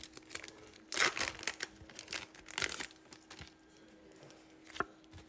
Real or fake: real